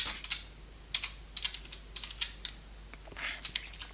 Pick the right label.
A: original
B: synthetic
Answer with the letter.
A